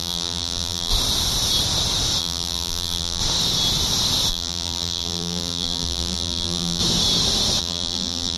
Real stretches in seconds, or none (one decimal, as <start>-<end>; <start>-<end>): 0.9-2.2; 3.2-4.3; 6.8-7.6